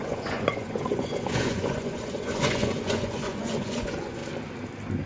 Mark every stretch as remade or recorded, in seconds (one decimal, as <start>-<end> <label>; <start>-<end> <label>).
0.0-4.2 remade; 4.2-5.1 recorded